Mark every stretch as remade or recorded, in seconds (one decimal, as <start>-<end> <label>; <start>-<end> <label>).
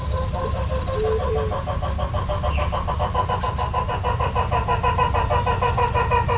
0.0-6.4 recorded